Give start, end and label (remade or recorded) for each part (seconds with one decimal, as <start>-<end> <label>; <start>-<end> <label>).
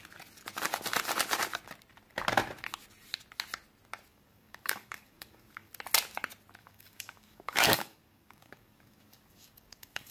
0.0-4.1 recorded; 4.1-5.7 remade; 5.7-6.6 recorded; 6.6-10.1 remade